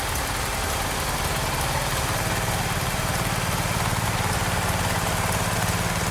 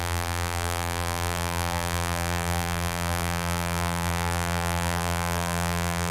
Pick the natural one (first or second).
first